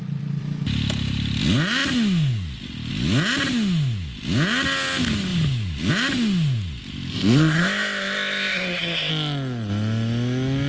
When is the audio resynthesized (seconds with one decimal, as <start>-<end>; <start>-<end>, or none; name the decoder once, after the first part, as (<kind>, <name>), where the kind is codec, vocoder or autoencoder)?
7.1-9.1 (codec, ZipCodec)